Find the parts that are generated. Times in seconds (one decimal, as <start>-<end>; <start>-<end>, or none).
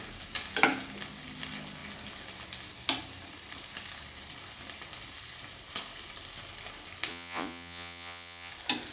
7.1-8.5